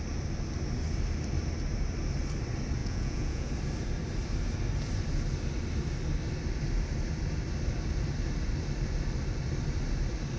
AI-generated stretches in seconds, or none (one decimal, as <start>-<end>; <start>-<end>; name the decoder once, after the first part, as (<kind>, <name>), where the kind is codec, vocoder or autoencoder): 2.8-3.5 (vocoder, Vocos)